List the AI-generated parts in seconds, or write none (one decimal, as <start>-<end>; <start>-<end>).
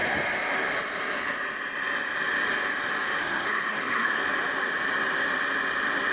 3.2-4.2